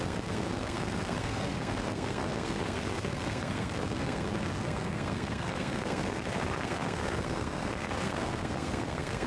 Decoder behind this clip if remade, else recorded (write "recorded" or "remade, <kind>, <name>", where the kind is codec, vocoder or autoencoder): remade, codec, SNAC